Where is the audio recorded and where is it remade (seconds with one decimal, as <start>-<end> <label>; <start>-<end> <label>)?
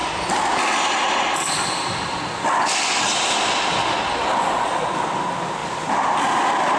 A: 0.0-5.6 recorded; 5.6-6.1 remade; 6.1-6.8 recorded